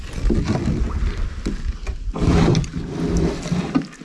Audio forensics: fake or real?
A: real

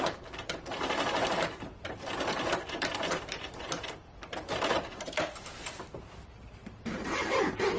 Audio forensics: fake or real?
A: fake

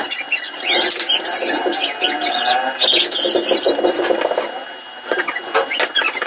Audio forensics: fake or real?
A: real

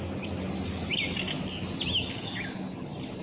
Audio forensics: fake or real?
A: real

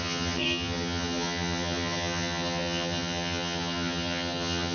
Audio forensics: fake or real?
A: fake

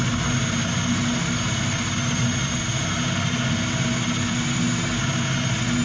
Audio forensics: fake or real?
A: real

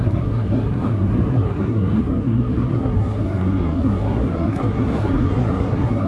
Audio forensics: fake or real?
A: fake